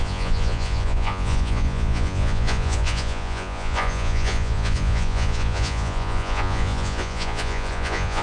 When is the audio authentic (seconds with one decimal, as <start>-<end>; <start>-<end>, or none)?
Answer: none